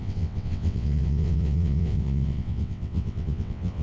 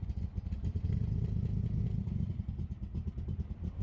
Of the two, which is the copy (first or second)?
first